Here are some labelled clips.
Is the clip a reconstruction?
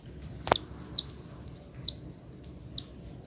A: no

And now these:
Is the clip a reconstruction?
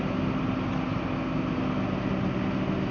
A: no